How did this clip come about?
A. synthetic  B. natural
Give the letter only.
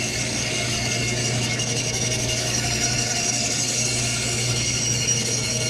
A